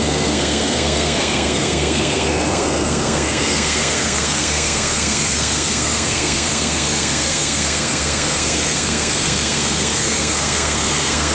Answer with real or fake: fake